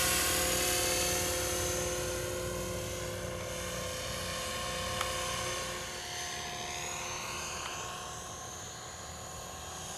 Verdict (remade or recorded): recorded